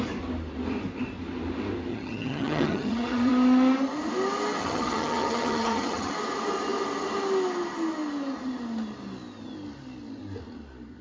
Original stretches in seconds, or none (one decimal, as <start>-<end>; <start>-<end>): 0.0-1.9; 3.3-4.6; 6.1-11.0